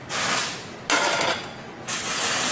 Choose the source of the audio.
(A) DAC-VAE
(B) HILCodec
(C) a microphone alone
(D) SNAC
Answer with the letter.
C